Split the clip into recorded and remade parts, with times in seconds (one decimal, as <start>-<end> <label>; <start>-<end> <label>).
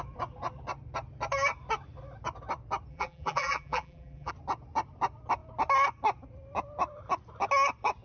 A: 0.0-2.9 recorded; 2.9-4.3 remade; 4.3-8.0 recorded